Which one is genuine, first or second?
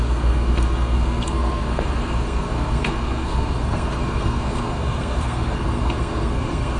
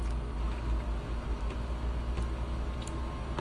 second